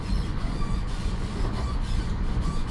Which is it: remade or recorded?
remade